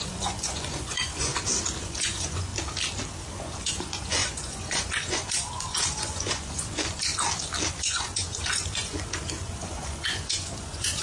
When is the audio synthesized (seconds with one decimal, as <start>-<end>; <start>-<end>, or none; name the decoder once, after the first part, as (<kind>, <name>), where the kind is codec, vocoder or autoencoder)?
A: 0.0-1.3 (vocoder, Vocos); 1.8-2.5; 3.3-7.1; 7.7-11.0